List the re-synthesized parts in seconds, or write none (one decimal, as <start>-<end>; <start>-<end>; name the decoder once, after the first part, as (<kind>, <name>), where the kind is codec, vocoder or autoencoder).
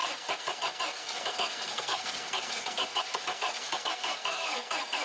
0.0-5.0 (codec, SNAC)